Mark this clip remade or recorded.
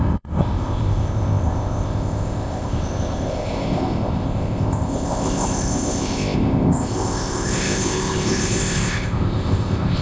remade